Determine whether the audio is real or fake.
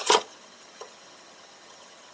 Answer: fake